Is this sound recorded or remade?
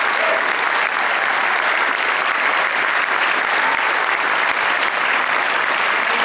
recorded